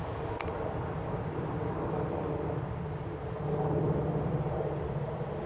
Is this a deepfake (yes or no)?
no